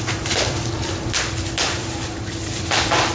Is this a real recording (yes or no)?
no